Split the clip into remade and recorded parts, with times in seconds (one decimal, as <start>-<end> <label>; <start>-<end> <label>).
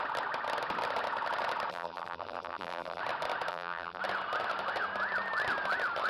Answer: 0.0-1.7 recorded; 1.7-3.0 remade; 3.0-3.5 recorded; 3.5-4.0 remade; 4.0-6.1 recorded